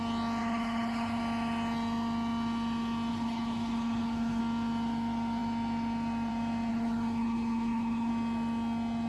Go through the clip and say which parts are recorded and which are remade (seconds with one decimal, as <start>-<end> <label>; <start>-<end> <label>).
0.0-0.4 recorded; 0.4-1.2 remade; 1.2-3.1 recorded; 3.1-4.4 remade; 4.4-6.7 recorded; 6.7-8.1 remade; 8.1-9.1 recorded